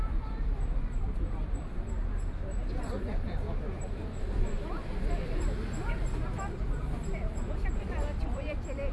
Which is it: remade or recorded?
remade